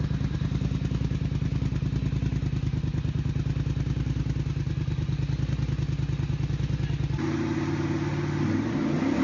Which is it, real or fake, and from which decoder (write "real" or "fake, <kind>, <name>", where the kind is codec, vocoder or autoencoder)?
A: real